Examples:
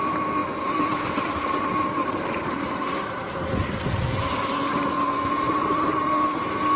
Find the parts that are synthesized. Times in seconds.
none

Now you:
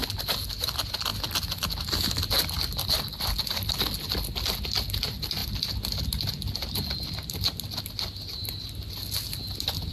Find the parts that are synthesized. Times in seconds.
none

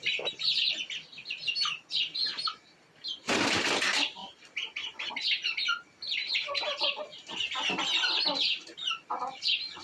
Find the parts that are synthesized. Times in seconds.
4.2-5.1 (vocoder, BigVGAN v2); 6.2-9.4

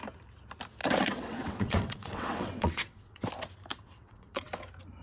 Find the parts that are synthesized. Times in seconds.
0.8-3.3 (vocoder, WaveNeXt); 3.7-4.5

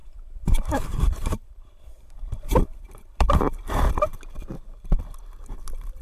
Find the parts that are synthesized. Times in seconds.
0.0-3.4 (vocoder, BigVGAN v2)

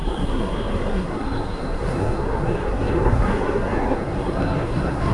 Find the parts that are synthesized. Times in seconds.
0.0-5.1 (codec, SNAC)

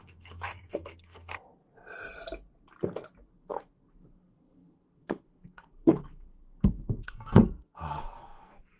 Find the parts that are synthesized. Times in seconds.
0.0-1.6 (codec, SNAC); 3.3-8.8